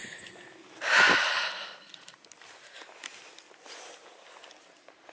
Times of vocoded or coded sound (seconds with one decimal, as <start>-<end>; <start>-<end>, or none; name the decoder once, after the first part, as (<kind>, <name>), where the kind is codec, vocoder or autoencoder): none